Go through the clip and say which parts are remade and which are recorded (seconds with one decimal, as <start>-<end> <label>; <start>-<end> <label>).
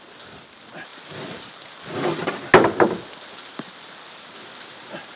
0.0-5.2 recorded